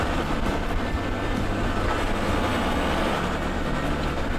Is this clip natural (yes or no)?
yes